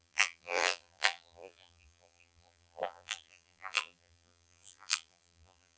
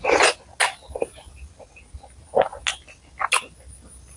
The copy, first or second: first